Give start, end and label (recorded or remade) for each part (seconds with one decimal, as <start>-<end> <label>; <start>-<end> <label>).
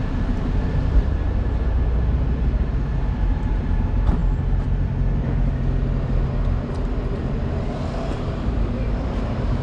0.0-4.2 remade; 4.2-8.0 recorded; 8.0-9.6 remade